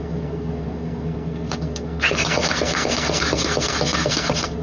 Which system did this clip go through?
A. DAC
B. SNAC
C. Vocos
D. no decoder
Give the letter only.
B